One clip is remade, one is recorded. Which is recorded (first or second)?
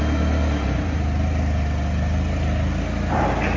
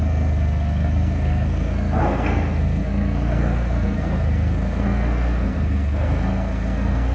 first